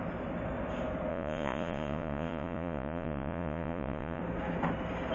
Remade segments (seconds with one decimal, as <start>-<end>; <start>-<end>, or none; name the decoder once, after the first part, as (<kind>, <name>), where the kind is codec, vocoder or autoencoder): 1.1-4.2 (vocoder, Vocos)